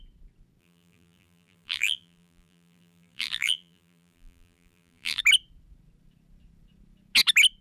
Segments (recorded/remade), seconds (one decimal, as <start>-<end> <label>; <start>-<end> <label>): 0.0-0.6 recorded; 0.6-5.2 remade; 5.2-7.6 recorded